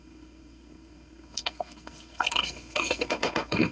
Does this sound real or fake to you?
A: fake